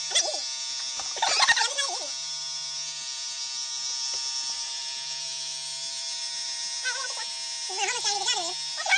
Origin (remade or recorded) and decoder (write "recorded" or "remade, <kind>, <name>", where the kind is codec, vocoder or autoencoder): recorded